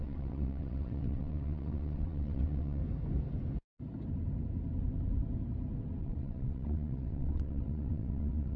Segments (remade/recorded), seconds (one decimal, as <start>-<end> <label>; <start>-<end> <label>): 0.0-2.8 remade; 2.8-6.0 recorded; 6.0-8.6 remade